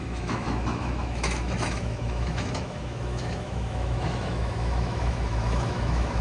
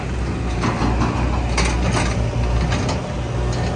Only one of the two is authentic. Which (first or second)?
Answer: second